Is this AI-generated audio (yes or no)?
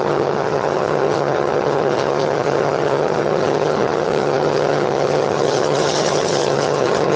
yes